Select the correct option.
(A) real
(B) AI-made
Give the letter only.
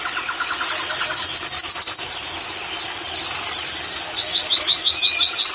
A